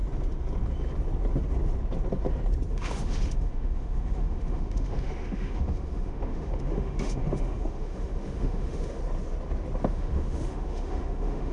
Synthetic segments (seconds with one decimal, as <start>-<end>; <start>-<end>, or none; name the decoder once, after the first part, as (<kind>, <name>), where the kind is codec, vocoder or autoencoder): 2.7-9.0 (autoencoder, DAC-VAE); 9.9-11.5